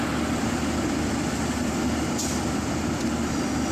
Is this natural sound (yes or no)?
yes